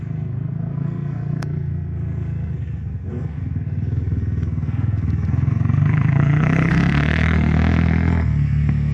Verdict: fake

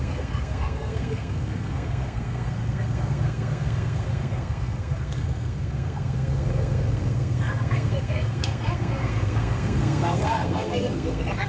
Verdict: fake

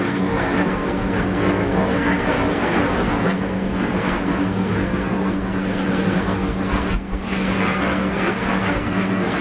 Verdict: fake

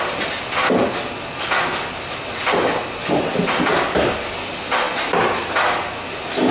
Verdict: real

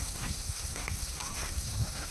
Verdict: fake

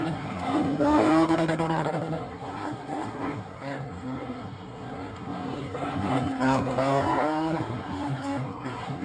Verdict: fake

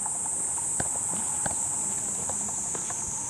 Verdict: real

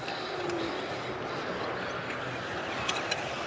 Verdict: real